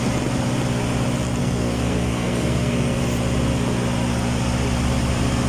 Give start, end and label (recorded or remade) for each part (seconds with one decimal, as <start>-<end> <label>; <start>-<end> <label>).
0.0-1.4 recorded; 1.4-3.0 remade; 3.0-5.5 recorded